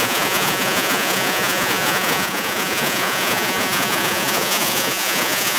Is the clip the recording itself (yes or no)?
no